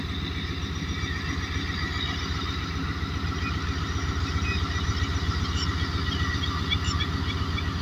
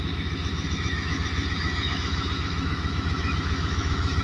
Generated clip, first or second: second